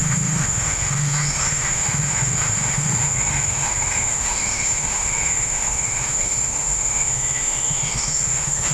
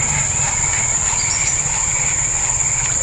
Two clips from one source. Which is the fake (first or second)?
first